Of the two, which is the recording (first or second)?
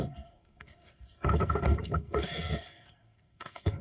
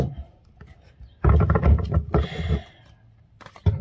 second